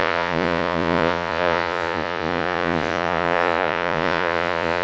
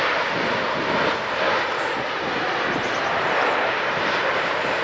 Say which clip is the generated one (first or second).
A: first